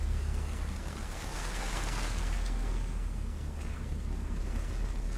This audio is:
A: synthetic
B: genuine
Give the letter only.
A